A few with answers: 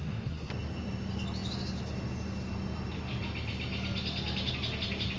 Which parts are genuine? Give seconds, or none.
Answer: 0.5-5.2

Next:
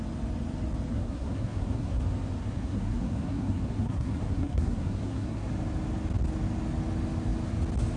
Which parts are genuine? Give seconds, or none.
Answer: 0.0-0.9; 2.0-2.4; 5.5-8.0

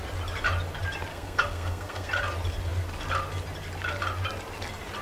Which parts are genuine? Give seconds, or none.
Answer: 0.0-1.1; 2.1-5.0